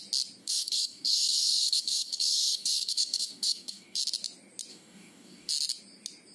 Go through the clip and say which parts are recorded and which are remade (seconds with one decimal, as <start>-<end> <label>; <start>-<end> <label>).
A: 0.0-0.4 recorded; 0.4-4.0 remade; 4.0-4.7 recorded; 4.7-5.5 remade; 5.5-6.3 recorded